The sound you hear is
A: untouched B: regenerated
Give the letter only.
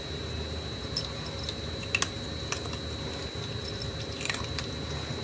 A